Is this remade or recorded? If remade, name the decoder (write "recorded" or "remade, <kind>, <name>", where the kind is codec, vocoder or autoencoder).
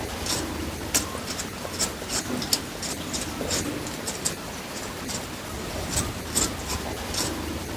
recorded